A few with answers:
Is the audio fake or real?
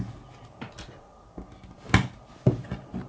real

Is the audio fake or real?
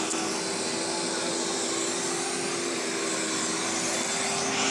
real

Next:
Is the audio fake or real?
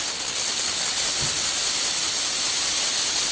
real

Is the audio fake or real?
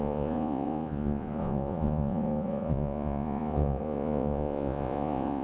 fake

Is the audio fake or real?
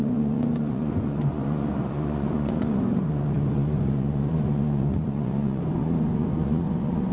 fake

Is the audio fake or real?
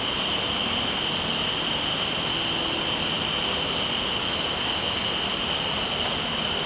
real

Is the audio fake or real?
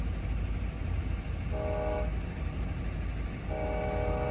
real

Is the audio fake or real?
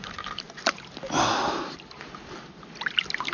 real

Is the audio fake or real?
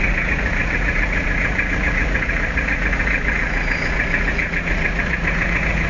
fake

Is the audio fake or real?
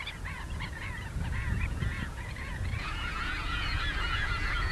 fake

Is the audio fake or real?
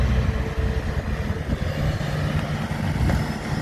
real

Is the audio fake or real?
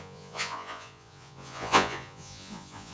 fake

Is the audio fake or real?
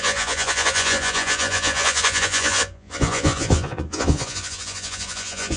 fake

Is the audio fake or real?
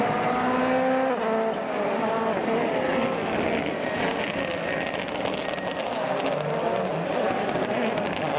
real